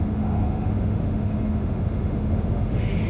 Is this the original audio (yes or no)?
no